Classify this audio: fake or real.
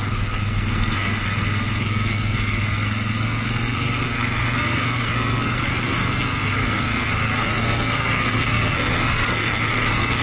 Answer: fake